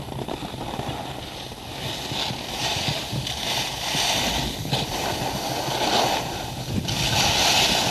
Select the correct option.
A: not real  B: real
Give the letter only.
B